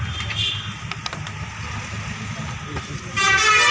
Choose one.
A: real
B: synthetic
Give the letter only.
A